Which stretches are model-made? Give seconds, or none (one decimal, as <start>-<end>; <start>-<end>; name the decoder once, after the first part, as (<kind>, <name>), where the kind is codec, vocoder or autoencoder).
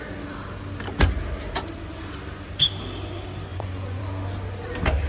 3.5-4.0 (vocoder, Vocos)